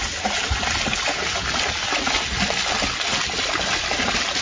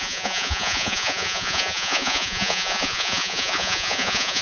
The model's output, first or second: second